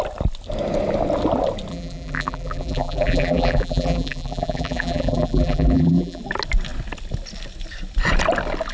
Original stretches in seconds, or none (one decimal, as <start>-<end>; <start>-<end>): 0.0-1.7; 6.2-8.7